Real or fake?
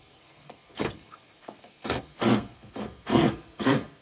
fake